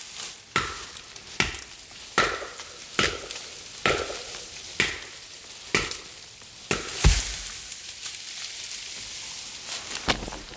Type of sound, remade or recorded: recorded